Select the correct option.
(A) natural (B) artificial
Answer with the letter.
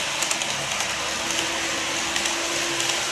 A